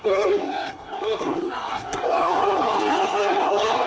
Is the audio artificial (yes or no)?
yes